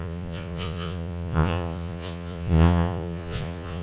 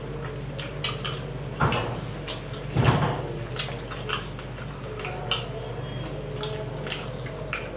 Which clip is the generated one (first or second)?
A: first